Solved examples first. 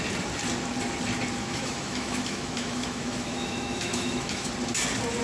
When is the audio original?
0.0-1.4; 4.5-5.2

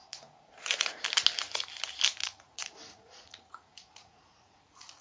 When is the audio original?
1.0-2.2

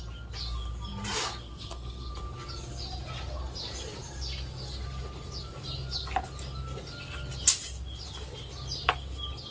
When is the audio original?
0.0-1.4; 2.1-9.5

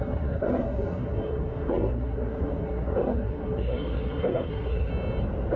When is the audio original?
4.9-5.6

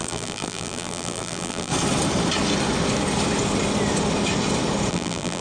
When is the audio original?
1.7-4.9

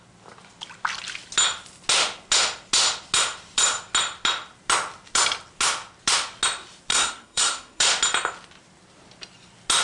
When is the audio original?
0.0-6.9; 7.8-9.8

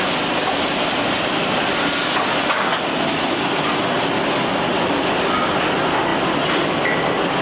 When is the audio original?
0.0-7.4

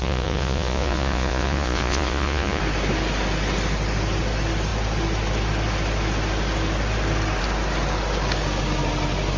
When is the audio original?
2.6-9.4